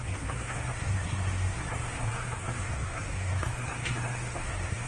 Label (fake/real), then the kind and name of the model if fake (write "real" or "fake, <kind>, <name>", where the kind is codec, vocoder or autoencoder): fake, codec, SNAC